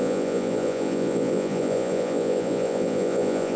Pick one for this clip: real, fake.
fake